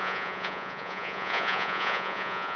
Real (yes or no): no